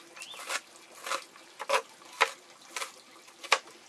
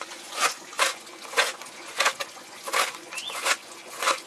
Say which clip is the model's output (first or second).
second